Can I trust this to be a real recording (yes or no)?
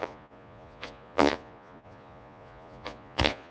no